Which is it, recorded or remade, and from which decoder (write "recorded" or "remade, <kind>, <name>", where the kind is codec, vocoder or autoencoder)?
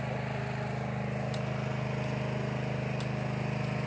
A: recorded